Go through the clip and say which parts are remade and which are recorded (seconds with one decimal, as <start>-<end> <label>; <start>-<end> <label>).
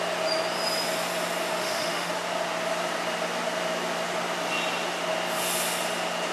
0.0-1.6 recorded; 1.6-2.1 remade; 2.1-6.3 recorded